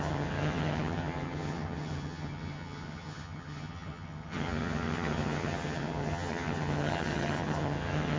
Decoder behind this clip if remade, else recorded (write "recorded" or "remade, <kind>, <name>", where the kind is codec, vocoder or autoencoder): remade, vocoder, HiFi-GAN